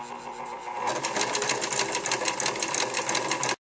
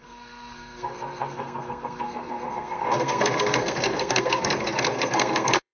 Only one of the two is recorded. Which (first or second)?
first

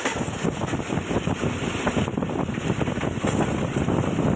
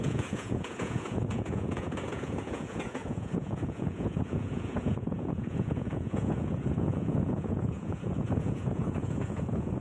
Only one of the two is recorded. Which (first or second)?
first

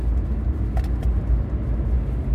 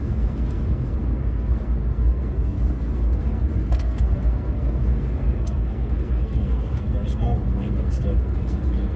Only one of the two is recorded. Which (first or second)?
first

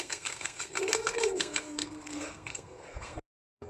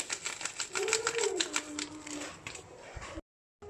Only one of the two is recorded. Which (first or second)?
second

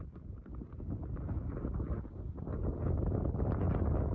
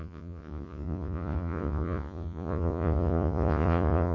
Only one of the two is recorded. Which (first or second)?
first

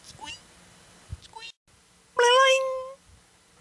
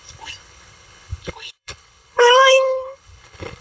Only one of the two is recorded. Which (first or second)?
first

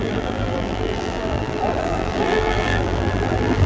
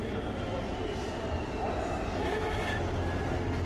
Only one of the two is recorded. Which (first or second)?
second